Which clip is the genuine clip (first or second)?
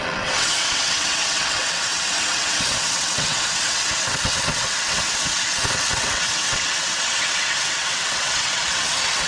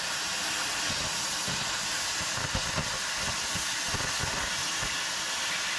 second